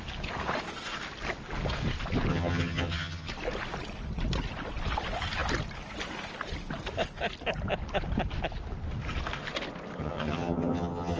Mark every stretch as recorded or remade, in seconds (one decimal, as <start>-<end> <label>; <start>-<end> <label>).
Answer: 0.0-2.3 recorded; 2.3-3.3 remade; 3.3-10.0 recorded; 10.0-11.2 remade